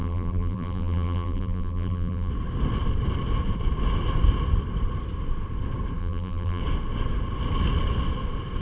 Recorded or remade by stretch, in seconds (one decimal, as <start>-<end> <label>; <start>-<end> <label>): 0.0-2.3 remade; 2.3-6.0 recorded; 6.0-6.6 remade; 6.6-8.6 recorded